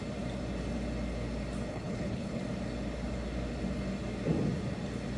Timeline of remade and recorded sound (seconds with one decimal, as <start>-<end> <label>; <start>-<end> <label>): 0.0-1.7 recorded; 1.7-2.4 remade; 2.4-5.2 recorded

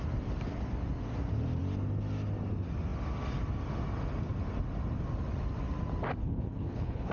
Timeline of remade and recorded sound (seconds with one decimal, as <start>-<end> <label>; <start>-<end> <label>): 0.0-6.2 recorded; 6.2-7.1 remade

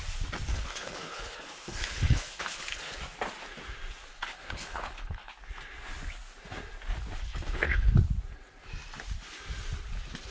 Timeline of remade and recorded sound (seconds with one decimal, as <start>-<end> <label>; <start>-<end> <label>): 0.0-0.5 recorded; 0.5-3.0 remade; 3.0-4.1 recorded; 4.1-5.3 remade; 5.3-7.2 recorded; 7.2-7.9 remade; 7.9-10.3 recorded

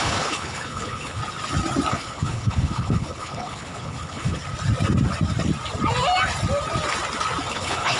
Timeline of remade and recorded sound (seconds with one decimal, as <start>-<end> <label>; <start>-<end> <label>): 0.0-1.2 remade; 1.2-1.9 recorded; 1.9-4.4 remade; 4.4-7.5 recorded; 7.5-8.0 remade

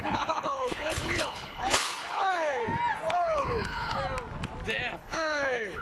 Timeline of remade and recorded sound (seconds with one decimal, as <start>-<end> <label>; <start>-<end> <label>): 0.0-2.6 remade; 2.6-3.1 recorded; 3.1-4.0 remade; 4.0-4.9 recorded; 4.9-5.8 remade